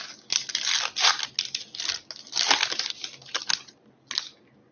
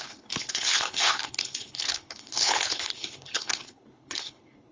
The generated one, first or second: second